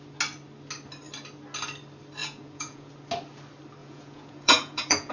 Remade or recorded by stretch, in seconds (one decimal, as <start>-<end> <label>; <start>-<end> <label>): 0.0-2.2 recorded; 2.2-2.9 remade; 2.9-3.8 recorded; 3.8-5.1 remade